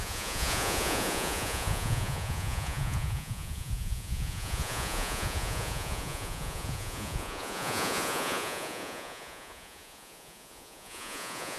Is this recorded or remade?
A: remade